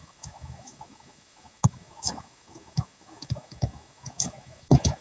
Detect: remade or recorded remade